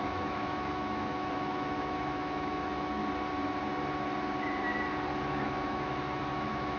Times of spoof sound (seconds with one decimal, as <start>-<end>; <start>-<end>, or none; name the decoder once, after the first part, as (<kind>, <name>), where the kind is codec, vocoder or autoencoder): 0.0-3.0 (autoencoder, DAC-VAE); 5.2-6.8